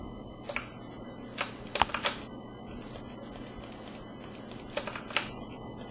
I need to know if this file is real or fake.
real